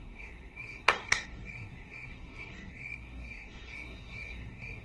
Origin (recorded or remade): remade